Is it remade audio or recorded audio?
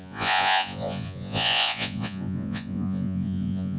remade